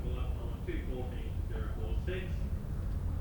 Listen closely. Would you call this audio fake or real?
real